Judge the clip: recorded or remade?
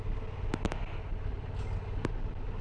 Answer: recorded